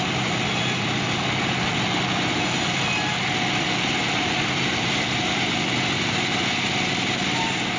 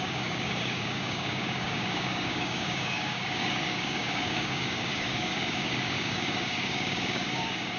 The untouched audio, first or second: first